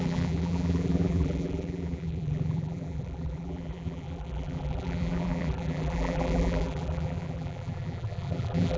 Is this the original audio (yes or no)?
no